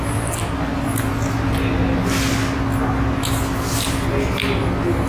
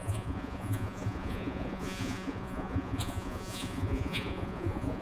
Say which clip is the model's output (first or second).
second